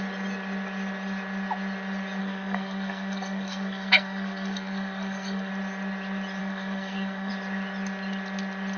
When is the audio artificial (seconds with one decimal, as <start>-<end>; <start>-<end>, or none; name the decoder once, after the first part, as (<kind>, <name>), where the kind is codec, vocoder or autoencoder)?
2.2-5.5 (codec, SNAC); 6.4-7.3